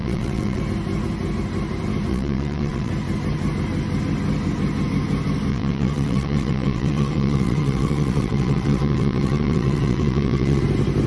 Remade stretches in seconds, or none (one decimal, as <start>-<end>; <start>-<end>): 0.0-0.6; 2.1-2.9; 5.5-10.6